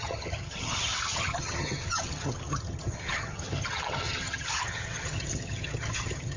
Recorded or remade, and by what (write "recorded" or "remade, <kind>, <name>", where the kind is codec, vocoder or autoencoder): remade, vocoder, HiFi-GAN